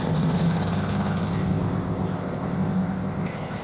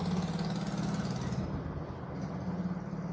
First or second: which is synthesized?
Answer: first